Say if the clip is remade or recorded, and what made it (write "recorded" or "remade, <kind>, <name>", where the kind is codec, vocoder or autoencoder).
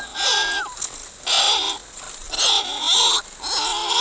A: recorded